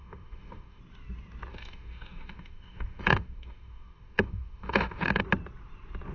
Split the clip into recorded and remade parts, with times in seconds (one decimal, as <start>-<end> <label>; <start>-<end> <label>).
0.0-0.8 remade; 0.8-1.5 recorded; 1.5-5.2 remade; 5.2-6.1 recorded